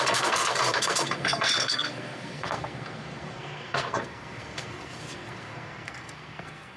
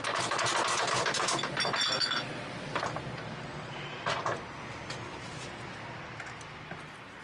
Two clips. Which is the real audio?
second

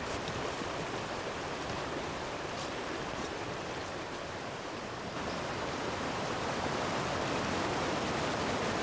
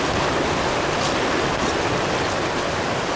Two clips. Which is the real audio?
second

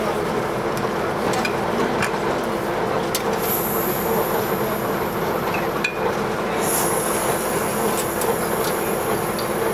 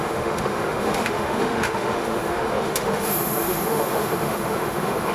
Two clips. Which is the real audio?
first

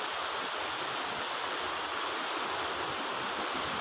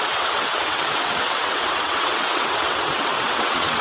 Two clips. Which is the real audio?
first